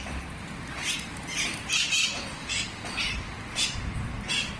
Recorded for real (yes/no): yes